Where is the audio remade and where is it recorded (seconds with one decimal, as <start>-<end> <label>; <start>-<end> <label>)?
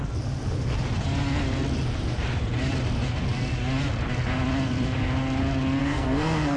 0.0-5.8 recorded; 5.8-6.6 remade